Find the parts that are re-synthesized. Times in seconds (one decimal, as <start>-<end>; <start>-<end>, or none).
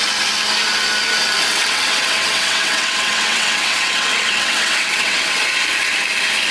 1.5-5.4